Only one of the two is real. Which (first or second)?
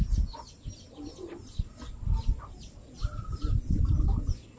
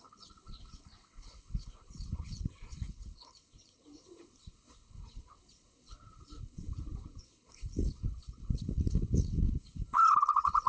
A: first